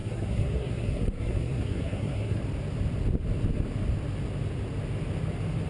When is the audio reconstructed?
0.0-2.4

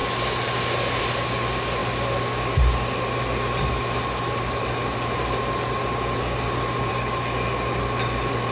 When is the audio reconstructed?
none

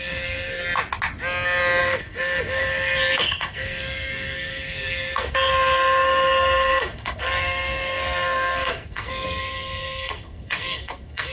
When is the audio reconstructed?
0.0-0.6; 1.8-11.3

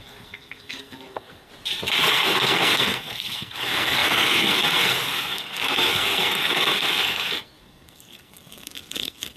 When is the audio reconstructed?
0.0-1.5; 2.1-9.4

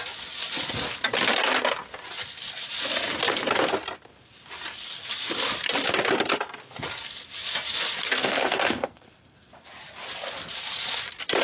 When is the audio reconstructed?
8.2-9.5

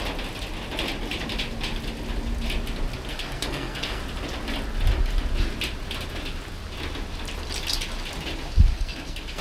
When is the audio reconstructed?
3.1-4.0; 8.7-9.4

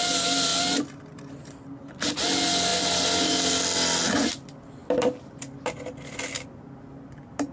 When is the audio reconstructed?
none

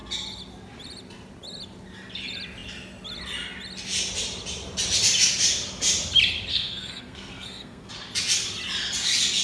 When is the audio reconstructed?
6.5-7.9